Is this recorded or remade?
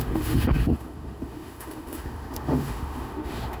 remade